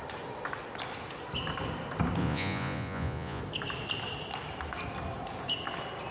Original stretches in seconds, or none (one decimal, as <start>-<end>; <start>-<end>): 0.0-2.2; 3.4-6.1